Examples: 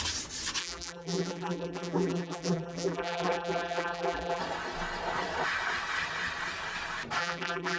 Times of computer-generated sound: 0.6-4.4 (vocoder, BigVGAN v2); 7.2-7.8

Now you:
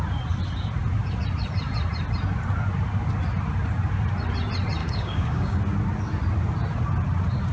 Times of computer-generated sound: 4.8-5.6 (codec, DAC)

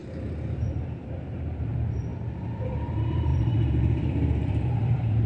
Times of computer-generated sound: 0.0-5.3 (vocoder, BigVGAN v2)

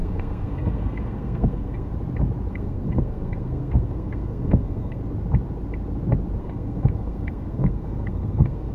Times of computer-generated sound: 0.0-1.9 (codec, SNAC); 2.5-5.0; 6.4-8.7

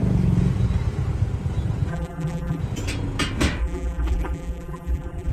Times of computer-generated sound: 1.9-2.6 (vocoder, BigVGAN v2); 3.6-5.3

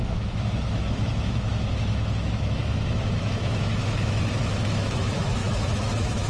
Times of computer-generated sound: 0.0-6.3 (autoencoder, DAC-VAE)